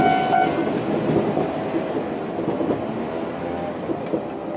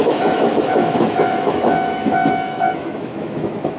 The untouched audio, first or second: first